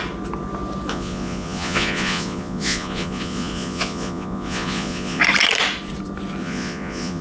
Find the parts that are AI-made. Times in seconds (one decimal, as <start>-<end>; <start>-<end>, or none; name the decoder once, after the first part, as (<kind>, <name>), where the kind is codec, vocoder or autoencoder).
0.9-5.2 (vocoder, Vocos); 6.4-7.2